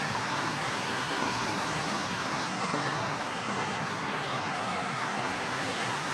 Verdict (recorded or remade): remade